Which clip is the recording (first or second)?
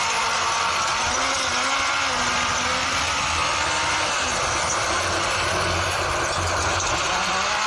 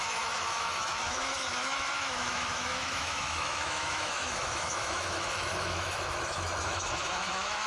first